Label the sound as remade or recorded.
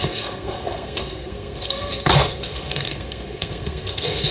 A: remade